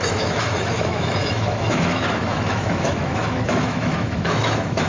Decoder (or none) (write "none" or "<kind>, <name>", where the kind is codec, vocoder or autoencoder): autoencoder, DAC-VAE